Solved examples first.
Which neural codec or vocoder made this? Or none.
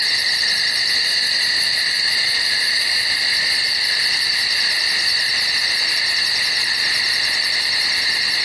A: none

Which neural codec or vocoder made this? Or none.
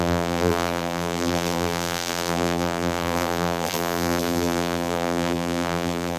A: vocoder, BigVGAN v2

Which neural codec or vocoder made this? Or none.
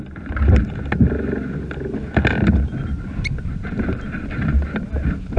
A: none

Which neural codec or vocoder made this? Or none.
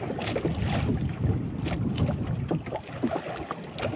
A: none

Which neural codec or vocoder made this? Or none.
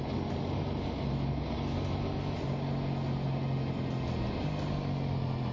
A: none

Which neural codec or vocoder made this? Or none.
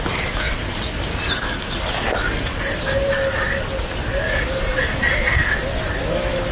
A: none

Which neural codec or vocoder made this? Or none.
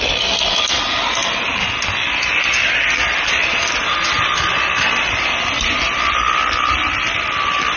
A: none